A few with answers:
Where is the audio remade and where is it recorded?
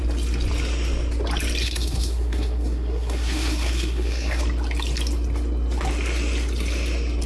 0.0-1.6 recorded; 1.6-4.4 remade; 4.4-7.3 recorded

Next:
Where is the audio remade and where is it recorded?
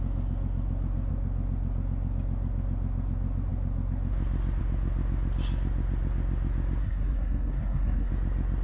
0.0-6.8 recorded; 6.8-8.1 remade; 8.1-8.6 recorded